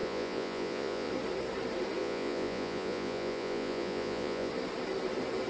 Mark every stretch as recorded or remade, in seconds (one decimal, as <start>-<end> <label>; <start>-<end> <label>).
0.0-1.1 remade; 1.1-2.0 recorded; 2.0-4.5 remade; 4.5-5.5 recorded